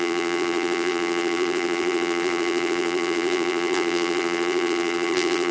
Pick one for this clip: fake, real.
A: fake